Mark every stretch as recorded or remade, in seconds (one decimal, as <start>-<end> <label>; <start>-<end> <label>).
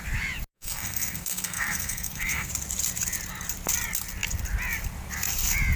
0.0-0.5 recorded; 0.5-2.5 remade; 2.5-5.8 recorded